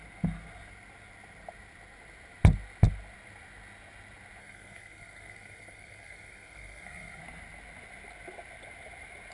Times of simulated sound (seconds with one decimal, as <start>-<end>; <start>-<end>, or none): 4.4-7.2